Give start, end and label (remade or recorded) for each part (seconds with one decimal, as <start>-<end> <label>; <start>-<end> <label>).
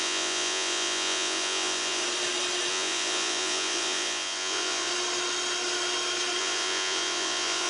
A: 0.0-2.0 remade; 2.0-2.7 recorded; 2.7-4.9 remade; 4.9-6.4 recorded; 6.4-7.7 remade